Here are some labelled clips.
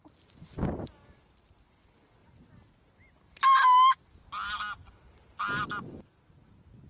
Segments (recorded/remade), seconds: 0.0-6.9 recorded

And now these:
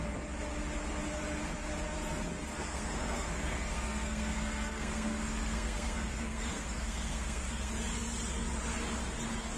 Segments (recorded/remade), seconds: 0.0-2.5 recorded; 2.5-7.7 remade; 7.7-9.6 recorded